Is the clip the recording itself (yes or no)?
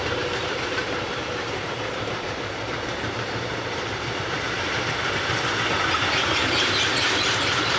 no